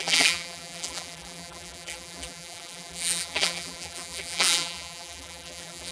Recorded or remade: remade